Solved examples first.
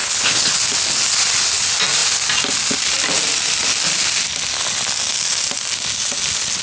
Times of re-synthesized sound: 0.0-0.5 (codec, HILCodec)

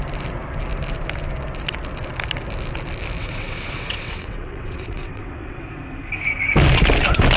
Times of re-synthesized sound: 3.2-5.6 (vocoder, WaveNeXt)

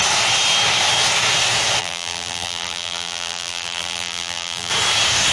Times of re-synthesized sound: 1.8-4.7 (vocoder, BigVGAN v2)

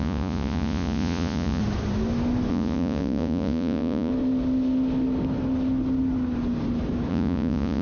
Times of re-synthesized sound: 0.0-1.6 (vocoder, Vocos); 2.5-4.1; 7.1-7.8

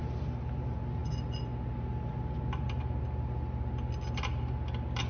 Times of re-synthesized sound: none

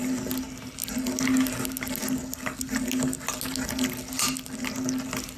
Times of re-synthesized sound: none

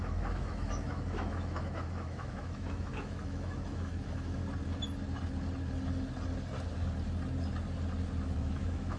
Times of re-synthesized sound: 0.0-4.4 (autoencoder, DAC-VAE); 8.2-9.0